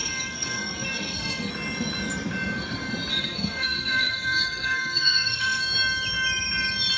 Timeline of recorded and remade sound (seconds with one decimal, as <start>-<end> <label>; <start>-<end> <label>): 0.0-1.5 remade; 1.5-3.1 recorded; 3.1-5.6 remade; 5.6-7.0 recorded